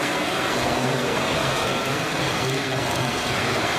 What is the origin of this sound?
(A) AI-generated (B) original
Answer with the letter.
A